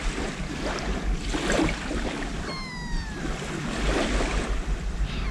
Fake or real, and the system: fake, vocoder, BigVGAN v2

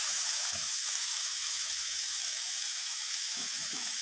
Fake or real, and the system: fake, autoencoder, DAC-VAE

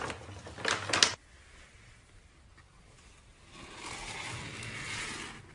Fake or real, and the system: real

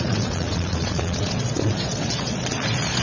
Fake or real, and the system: fake, vocoder, Vocos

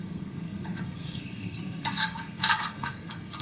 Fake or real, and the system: fake, codec, SNAC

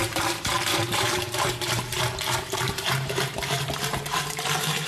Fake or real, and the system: fake, vocoder, BigVGAN v2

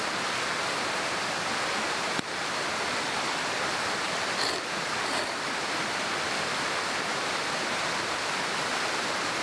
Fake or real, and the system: fake, vocoder, BigVGAN v2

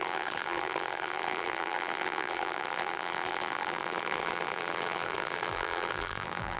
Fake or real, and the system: fake, vocoder, BigVGAN v2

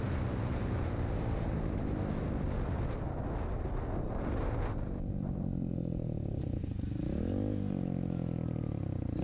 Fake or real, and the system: real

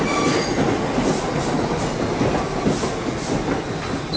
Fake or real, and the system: real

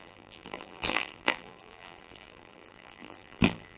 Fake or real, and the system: fake, vocoder, BigVGAN v2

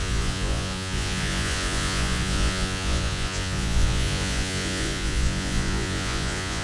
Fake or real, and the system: fake, vocoder, Vocos